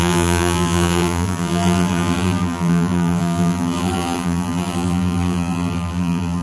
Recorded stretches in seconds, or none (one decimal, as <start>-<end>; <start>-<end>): none